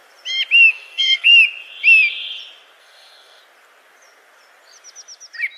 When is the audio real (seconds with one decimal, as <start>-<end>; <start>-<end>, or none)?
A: 0.0-0.7; 1.3-2.8; 3.4-5.6